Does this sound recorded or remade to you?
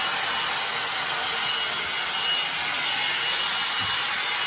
recorded